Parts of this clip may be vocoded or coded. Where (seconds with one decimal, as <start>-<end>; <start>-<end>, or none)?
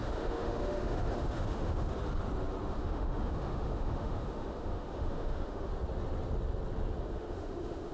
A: 0.0-1.9; 2.7-5.7; 7.0-7.9